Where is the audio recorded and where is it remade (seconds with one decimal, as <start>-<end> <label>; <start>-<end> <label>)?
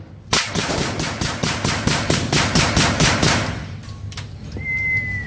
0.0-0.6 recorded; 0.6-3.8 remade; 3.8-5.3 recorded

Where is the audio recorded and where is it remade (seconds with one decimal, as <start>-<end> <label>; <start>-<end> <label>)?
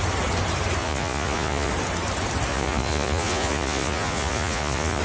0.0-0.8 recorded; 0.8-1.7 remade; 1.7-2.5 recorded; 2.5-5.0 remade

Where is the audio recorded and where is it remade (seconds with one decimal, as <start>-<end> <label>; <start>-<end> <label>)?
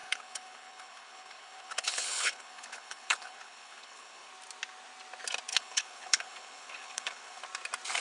0.0-4.3 remade; 4.3-5.5 recorded; 5.5-7.4 remade; 7.4-8.0 recorded